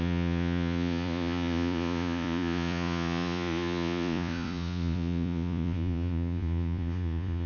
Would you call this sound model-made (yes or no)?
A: yes